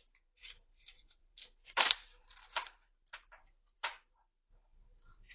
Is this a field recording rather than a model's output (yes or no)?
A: no